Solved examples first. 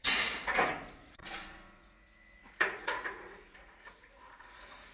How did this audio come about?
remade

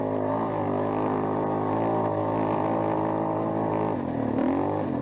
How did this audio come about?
recorded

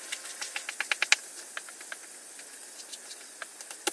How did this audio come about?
recorded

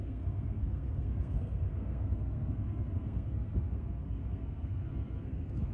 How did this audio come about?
remade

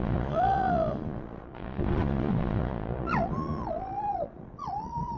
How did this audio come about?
remade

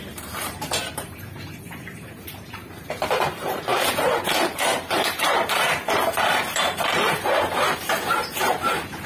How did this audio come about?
remade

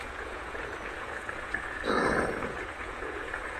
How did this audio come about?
remade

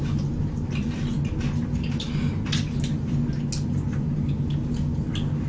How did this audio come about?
recorded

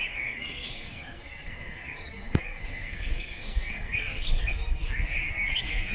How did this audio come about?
remade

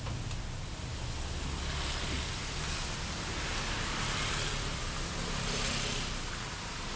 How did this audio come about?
recorded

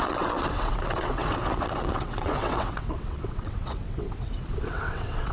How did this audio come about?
remade